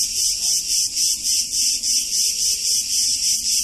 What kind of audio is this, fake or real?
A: real